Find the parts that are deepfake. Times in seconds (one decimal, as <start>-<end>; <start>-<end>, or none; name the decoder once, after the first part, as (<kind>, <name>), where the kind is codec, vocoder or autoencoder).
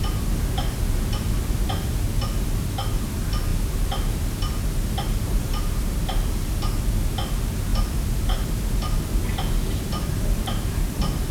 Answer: none